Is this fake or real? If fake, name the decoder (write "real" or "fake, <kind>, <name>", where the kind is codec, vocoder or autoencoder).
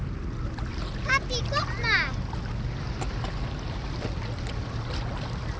real